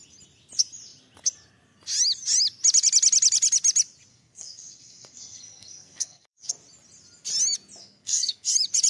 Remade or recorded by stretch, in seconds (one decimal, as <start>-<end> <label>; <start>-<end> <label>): 0.0-4.1 recorded; 4.1-6.5 remade; 6.5-7.8 recorded; 7.8-8.5 remade; 8.5-8.9 recorded